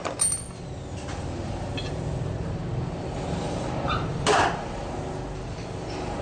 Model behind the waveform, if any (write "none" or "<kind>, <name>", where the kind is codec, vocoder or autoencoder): none